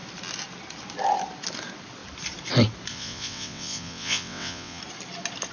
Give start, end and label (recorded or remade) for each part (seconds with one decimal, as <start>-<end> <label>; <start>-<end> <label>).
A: 0.0-2.9 recorded; 2.9-4.8 remade; 4.8-5.5 recorded